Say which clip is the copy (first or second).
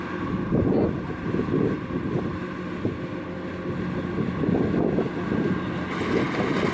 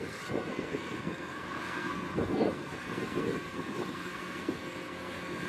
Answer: second